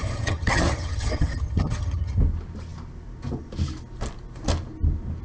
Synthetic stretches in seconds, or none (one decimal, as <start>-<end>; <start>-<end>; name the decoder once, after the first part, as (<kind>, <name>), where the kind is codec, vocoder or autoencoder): 0.0-2.2 (vocoder, HiFi-GAN)